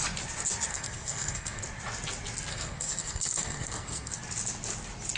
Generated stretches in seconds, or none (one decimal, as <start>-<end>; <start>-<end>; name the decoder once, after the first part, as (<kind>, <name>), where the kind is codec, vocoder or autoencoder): 0.7-1.6 (codec, SNAC); 2.5-4.2